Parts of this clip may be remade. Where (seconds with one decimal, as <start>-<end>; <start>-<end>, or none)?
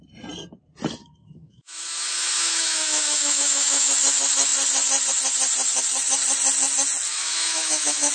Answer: 1.0-3.9; 7.1-8.1